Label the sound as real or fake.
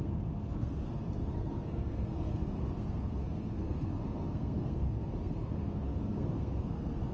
fake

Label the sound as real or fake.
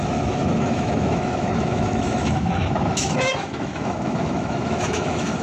fake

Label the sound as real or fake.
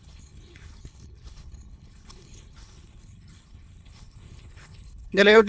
fake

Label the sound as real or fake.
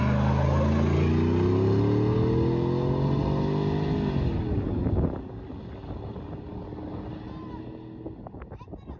real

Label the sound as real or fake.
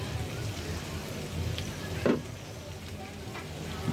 real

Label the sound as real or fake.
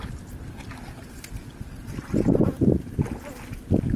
real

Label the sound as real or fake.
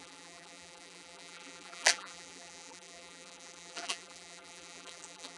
fake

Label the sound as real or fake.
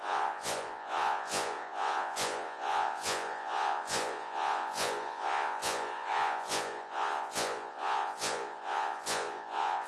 fake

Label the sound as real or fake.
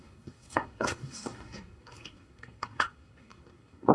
fake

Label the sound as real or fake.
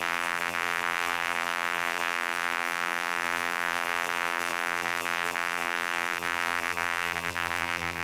fake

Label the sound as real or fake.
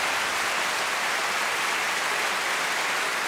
real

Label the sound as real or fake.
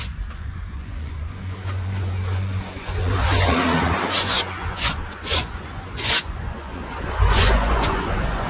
fake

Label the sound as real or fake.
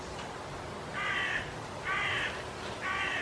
real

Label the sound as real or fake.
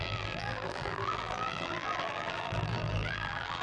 fake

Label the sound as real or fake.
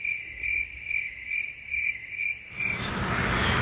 real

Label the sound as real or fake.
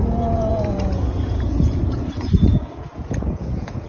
fake